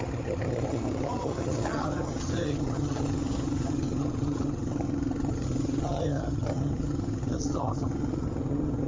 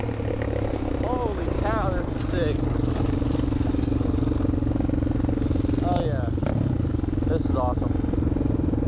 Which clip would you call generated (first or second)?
first